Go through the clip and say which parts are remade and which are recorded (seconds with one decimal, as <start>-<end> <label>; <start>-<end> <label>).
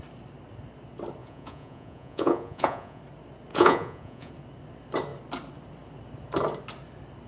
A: 0.0-1.2 recorded; 1.2-3.0 remade; 3.0-3.5 recorded; 3.5-4.3 remade; 4.3-7.3 recorded